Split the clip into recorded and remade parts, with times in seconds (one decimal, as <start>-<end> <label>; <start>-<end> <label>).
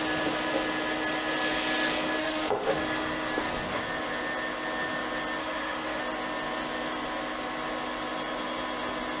0.0-2.2 recorded; 2.2-2.8 remade; 2.8-5.4 recorded; 5.4-6.0 remade; 6.0-9.2 recorded